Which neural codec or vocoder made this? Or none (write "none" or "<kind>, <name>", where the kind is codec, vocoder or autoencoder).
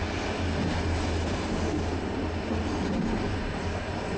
none